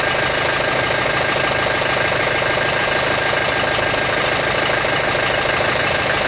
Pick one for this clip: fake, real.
real